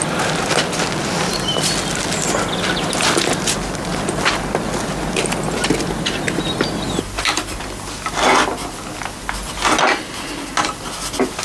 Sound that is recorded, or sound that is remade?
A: recorded